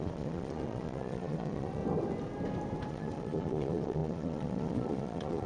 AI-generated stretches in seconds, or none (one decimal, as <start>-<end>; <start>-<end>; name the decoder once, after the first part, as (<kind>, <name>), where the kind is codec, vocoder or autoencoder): 0.0-1.8 (vocoder, Vocos); 2.9-5.5